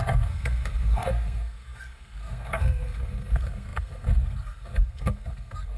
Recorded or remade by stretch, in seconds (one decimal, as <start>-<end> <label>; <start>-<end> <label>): 0.0-5.8 remade